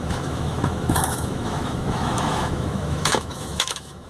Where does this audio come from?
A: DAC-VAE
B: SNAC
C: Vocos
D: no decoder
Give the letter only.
A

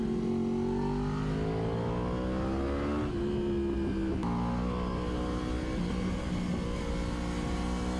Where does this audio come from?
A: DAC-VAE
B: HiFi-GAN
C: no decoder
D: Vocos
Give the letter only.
C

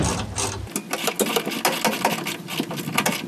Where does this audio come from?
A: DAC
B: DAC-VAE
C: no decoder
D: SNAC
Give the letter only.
C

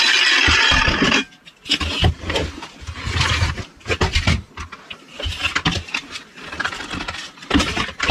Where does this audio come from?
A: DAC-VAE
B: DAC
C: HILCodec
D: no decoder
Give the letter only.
D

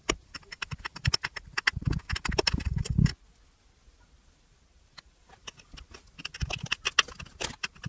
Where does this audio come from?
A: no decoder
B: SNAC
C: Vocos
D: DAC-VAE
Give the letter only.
A